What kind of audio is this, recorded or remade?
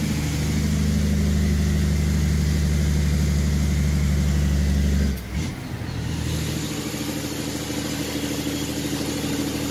recorded